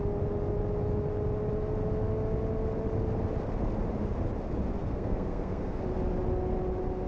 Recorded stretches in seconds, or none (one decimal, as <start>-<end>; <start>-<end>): 0.0-4.8; 5.8-7.1